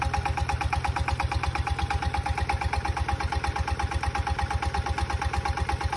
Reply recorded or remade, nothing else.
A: recorded